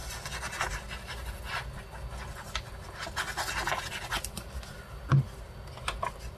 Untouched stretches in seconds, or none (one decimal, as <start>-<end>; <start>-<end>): 0.0-6.4